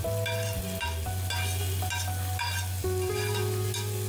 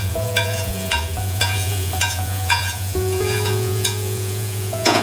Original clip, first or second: first